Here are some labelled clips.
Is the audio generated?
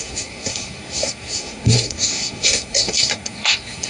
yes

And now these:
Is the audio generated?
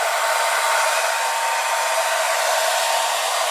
no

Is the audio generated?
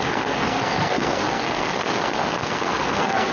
yes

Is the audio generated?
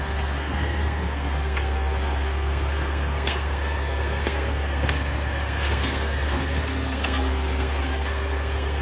yes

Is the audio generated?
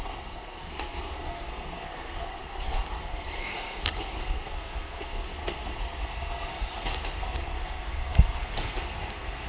yes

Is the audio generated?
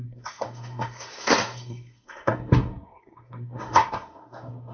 yes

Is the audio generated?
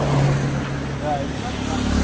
no